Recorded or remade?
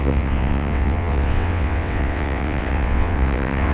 remade